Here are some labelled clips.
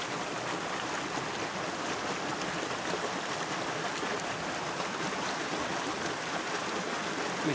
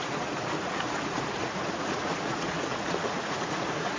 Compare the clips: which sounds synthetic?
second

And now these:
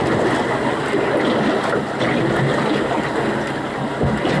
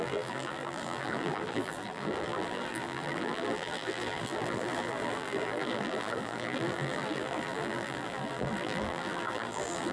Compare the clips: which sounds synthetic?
second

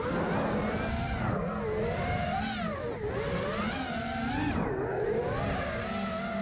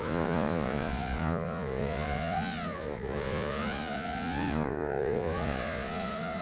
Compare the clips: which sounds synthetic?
second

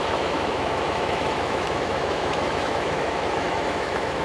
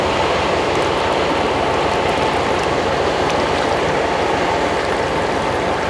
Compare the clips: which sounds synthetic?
first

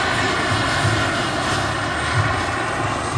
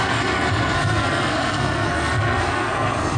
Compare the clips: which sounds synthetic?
second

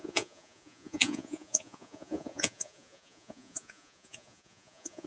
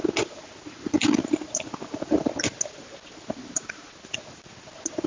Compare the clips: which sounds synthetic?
first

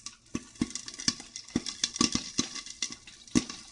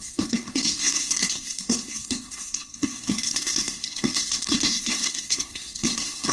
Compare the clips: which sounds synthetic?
second